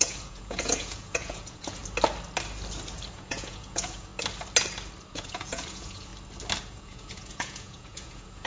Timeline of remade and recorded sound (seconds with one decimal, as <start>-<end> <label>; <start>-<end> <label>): 0.0-1.8 remade; 1.8-3.1 recorded; 3.1-4.1 remade; 4.1-5.1 recorded; 5.1-6.1 remade; 6.1-6.6 recorded; 6.6-8.5 remade